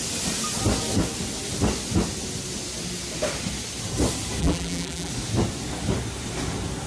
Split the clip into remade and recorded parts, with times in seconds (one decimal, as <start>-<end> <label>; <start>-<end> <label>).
0.0-4.4 recorded; 4.4-5.1 remade; 5.1-6.9 recorded